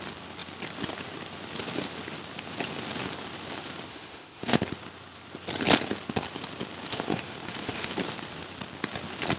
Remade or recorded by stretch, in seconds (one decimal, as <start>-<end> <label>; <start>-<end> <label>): 0.0-3.9 recorded; 3.9-4.6 remade; 4.6-6.9 recorded; 6.9-7.9 remade; 7.9-9.4 recorded